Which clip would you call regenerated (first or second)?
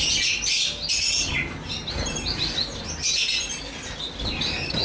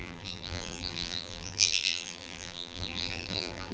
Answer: second